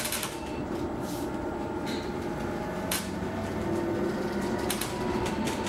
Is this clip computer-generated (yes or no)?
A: yes